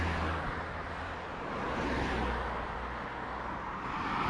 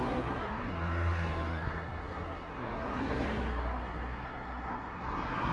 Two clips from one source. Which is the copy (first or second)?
second